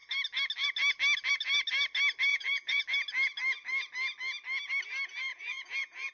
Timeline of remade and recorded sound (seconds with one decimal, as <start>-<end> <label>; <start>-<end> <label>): 0.0-2.3 recorded; 2.3-2.8 remade; 2.8-5.3 recorded; 5.3-6.1 remade